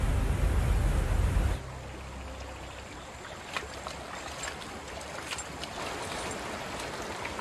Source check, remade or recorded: recorded